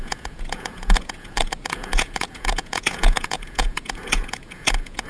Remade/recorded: remade